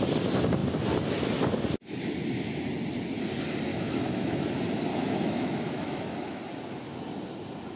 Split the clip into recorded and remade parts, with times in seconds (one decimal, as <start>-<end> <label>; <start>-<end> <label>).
0.0-3.7 recorded; 3.7-4.5 remade; 4.5-4.9 recorded; 4.9-6.4 remade; 6.4-7.8 recorded

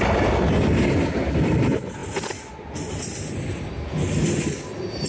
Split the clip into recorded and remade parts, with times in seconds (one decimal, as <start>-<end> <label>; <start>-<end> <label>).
0.0-5.1 recorded

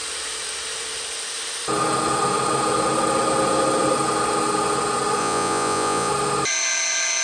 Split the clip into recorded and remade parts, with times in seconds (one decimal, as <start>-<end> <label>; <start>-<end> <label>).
0.0-5.2 recorded; 5.2-6.1 remade; 6.1-7.2 recorded

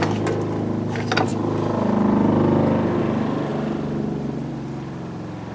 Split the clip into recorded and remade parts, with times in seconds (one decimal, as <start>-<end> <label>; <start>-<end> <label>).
0.0-5.5 recorded

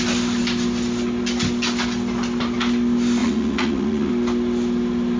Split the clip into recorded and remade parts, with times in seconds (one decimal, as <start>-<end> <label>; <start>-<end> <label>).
0.0-3.2 recorded; 3.2-4.1 remade; 4.1-5.2 recorded

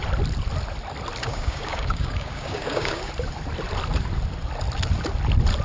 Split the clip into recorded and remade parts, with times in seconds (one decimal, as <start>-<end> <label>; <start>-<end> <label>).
0.0-1.2 recorded; 1.2-3.1 remade; 3.1-5.6 recorded

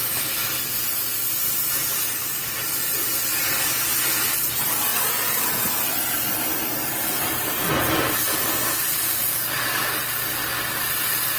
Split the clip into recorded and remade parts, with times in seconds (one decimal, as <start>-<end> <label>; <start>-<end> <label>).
0.0-2.0 recorded; 2.0-2.5 remade; 2.5-9.3 recorded; 9.3-9.9 remade; 9.9-11.4 recorded

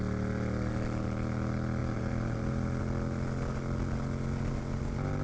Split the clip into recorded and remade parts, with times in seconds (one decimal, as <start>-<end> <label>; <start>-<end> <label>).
0.0-1.8 recorded; 1.8-2.8 remade; 2.8-5.2 recorded